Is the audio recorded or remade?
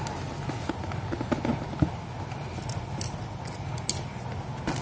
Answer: recorded